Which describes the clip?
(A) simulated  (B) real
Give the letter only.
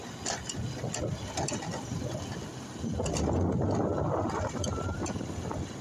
B